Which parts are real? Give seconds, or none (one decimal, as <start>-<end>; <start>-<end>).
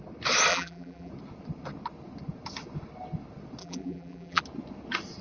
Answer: 0.0-0.5; 1.1-3.6; 4.4-5.2